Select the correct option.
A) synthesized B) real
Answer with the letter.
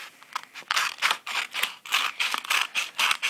B